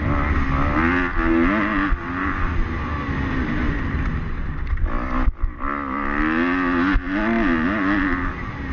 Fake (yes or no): no